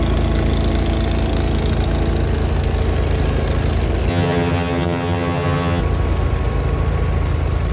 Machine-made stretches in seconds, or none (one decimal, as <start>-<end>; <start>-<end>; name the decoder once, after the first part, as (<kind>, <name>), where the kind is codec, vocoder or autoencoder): 4.1-5.8 (vocoder, HiFi-GAN)